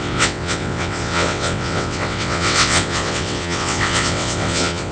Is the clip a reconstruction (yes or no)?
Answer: yes